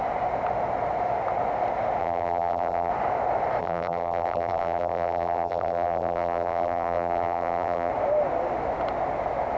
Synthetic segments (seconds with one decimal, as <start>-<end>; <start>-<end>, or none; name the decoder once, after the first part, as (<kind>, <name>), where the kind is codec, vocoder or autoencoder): 2.0-2.9 (vocoder, BigVGAN v2); 3.6-7.9